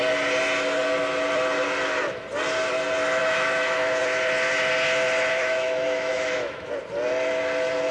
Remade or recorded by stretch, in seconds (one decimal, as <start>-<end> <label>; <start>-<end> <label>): 0.0-3.2 recorded; 3.2-4.0 remade; 4.0-5.3 recorded; 5.3-6.7 remade; 6.7-7.9 recorded